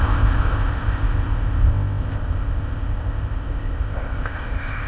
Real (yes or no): no